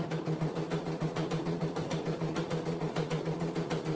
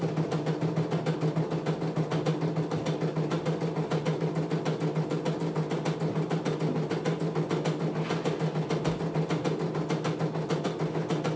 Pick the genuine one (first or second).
second